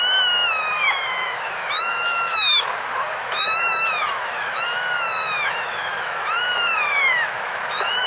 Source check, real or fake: fake